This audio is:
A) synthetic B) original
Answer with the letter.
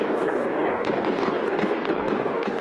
A